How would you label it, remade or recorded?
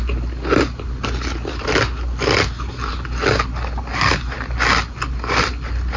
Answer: recorded